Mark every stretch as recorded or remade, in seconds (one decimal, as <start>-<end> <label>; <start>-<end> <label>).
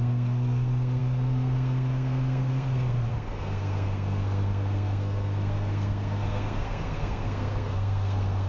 0.0-8.5 remade